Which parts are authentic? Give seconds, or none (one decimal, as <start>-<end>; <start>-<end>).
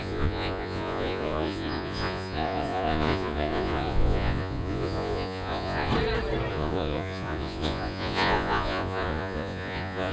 5.9-6.5